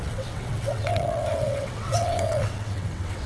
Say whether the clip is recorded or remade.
remade